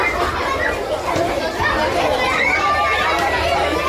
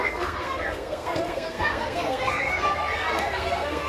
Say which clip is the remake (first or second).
second